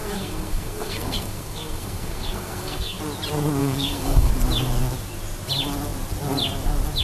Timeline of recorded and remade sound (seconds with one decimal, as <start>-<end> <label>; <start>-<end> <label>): 0.0-3.0 remade; 3.0-3.6 recorded; 3.6-4.3 remade; 4.3-7.0 recorded